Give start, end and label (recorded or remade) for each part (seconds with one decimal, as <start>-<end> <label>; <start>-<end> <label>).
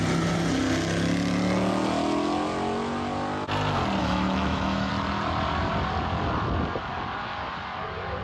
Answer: 0.0-4.0 recorded; 4.0-4.9 remade; 4.9-8.2 recorded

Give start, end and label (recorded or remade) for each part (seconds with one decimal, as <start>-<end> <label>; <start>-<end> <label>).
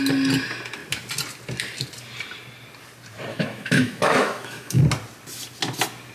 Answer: 0.0-3.3 recorded; 3.3-4.8 remade; 4.8-6.1 recorded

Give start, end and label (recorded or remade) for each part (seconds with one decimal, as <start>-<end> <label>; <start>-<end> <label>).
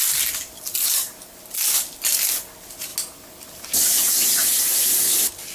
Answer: 0.0-5.5 recorded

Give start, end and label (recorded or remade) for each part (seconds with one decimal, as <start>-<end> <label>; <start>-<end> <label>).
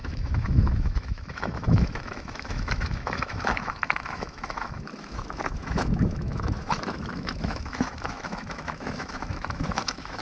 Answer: 0.0-10.2 remade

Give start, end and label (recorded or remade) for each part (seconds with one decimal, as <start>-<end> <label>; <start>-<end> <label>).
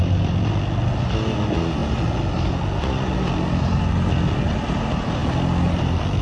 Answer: 0.0-6.2 recorded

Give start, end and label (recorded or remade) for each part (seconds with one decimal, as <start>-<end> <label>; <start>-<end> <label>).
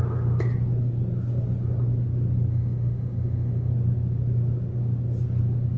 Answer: 0.0-2.5 recorded; 2.5-3.7 remade; 3.7-5.8 recorded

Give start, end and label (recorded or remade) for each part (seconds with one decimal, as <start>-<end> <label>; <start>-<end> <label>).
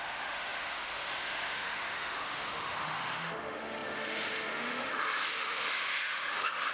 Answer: 0.0-6.7 remade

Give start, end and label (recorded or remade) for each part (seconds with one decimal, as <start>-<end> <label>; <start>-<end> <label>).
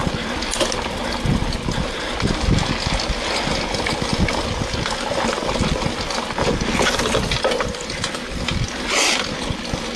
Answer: 0.0-10.0 recorded